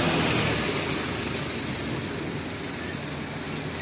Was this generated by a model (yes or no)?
no